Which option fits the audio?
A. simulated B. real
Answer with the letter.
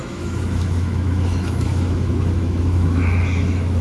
A